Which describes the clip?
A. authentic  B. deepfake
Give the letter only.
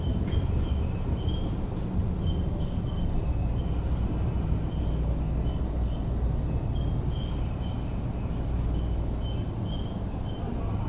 A